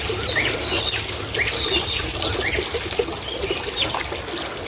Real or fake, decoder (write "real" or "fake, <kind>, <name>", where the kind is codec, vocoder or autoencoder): real